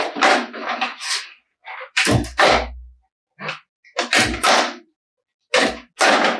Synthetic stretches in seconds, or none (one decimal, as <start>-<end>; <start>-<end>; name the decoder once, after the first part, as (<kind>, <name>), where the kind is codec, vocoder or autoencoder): none